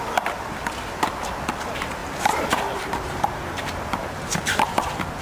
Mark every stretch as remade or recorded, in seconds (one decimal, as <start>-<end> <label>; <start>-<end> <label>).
0.0-2.0 recorded; 2.0-4.7 remade; 4.7-5.2 recorded